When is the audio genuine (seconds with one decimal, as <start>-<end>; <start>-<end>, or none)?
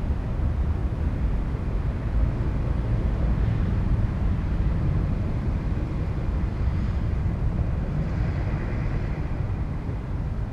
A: 0.0-10.5